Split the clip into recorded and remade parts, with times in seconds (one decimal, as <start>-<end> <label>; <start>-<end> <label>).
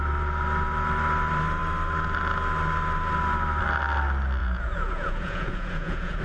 0.0-4.4 recorded; 4.4-6.2 remade